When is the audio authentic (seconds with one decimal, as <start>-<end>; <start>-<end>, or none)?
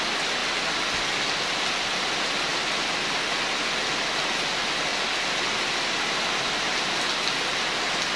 0.0-8.2